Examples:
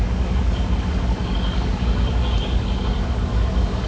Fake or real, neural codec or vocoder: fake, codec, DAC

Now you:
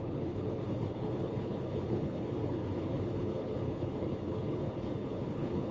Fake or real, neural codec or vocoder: fake, codec, HILCodec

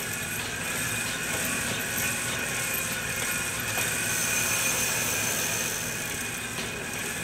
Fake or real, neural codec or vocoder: real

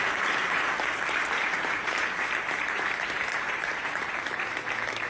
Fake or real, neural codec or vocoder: fake, vocoder, BigVGAN v2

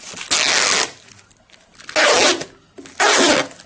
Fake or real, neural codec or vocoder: real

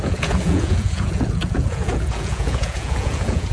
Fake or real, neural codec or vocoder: fake, vocoder, Vocos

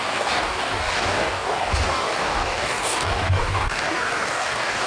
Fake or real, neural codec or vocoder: fake, codec, DAC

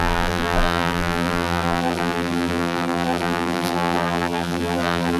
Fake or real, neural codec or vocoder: fake, vocoder, BigVGAN v2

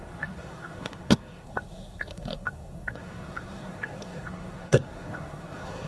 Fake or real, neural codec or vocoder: fake, codec, SNAC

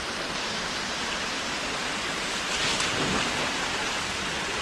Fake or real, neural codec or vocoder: real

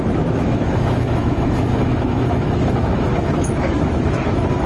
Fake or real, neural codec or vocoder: fake, autoencoder, DAC-VAE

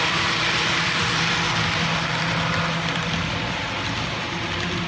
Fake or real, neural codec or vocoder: real